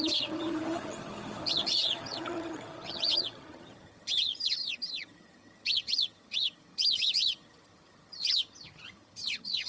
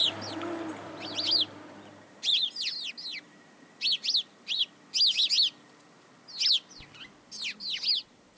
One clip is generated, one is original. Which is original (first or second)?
second